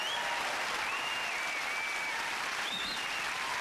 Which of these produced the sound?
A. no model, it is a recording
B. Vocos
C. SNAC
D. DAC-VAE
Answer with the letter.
A